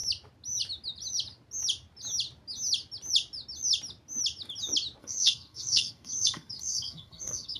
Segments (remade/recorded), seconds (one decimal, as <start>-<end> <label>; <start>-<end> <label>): 0.0-5.0 recorded; 5.0-7.6 remade